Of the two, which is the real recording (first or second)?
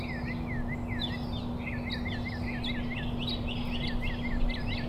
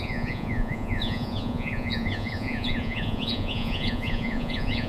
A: first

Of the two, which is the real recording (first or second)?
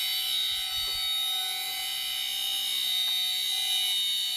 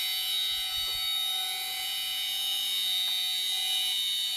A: first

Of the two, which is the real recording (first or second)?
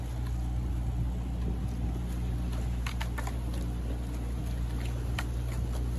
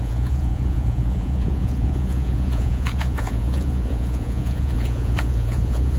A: first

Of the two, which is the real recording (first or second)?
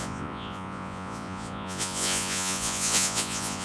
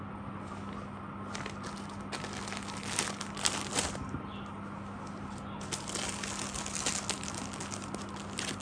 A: second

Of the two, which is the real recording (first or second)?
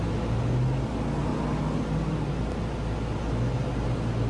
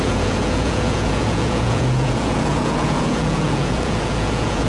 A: first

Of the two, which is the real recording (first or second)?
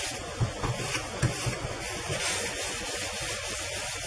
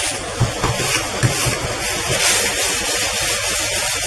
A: second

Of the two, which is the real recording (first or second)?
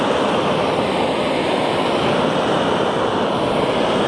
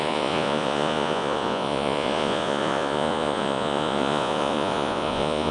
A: first